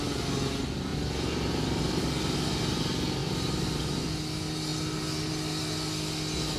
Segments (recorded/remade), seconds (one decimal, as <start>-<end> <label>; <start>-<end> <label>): 0.0-0.9 recorded; 0.9-2.0 remade; 2.0-3.2 recorded; 3.2-4.0 remade; 4.0-6.6 recorded